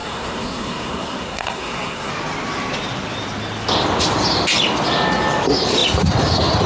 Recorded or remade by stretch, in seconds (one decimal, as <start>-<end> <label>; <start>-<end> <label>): 0.0-2.1 remade; 2.1-6.7 recorded